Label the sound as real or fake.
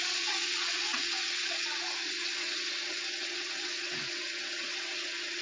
fake